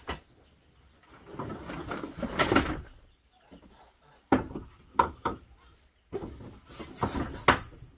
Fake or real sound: real